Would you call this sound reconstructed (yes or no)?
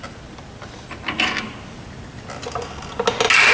no